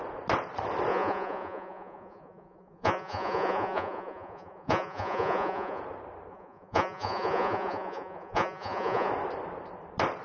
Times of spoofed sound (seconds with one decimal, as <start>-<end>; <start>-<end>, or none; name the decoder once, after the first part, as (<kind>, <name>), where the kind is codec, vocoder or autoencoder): 0.9-5.8 (vocoder, Vocos); 6.3-9.1